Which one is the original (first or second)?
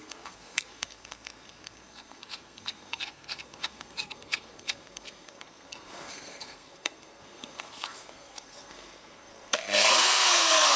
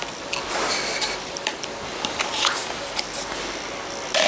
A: second